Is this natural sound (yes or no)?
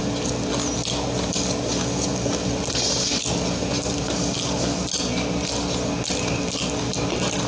yes